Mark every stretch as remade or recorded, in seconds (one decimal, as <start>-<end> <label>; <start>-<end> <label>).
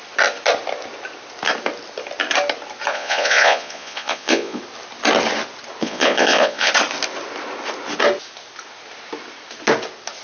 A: 0.0-2.9 recorded; 2.9-4.6 remade; 4.6-5.8 recorded; 5.8-6.7 remade; 6.7-10.2 recorded